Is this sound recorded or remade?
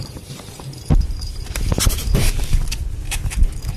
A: remade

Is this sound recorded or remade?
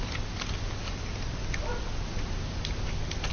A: recorded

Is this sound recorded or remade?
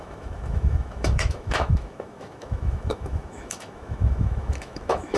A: remade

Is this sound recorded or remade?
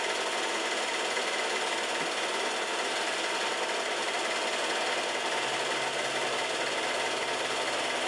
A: recorded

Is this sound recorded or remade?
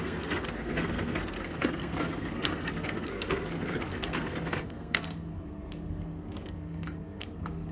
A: remade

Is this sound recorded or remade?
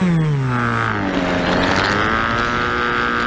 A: recorded